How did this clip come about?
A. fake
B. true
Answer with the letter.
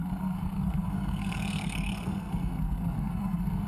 A